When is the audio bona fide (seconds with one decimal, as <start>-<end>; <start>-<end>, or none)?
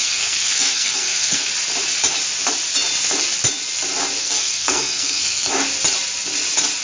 1.5-4.2; 5.5-6.8